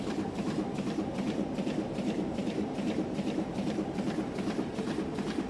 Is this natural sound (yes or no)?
yes